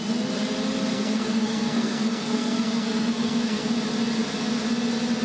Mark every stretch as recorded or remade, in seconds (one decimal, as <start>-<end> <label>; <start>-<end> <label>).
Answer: 0.0-0.9 recorded; 0.9-3.7 remade; 3.7-5.2 recorded